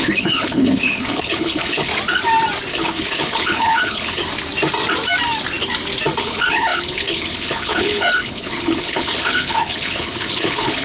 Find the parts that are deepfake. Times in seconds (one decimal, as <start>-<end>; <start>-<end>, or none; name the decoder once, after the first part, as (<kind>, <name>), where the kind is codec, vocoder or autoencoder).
0.0-1.9 (codec, HILCodec); 2.7-4.2; 6.2-10.8